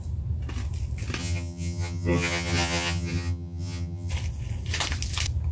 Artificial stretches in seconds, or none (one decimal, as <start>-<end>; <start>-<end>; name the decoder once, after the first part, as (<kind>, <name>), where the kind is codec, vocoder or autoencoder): 1.2-4.1 (vocoder, HiFi-GAN)